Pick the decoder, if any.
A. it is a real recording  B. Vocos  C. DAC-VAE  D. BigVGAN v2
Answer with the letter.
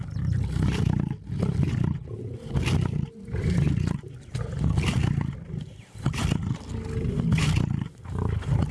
A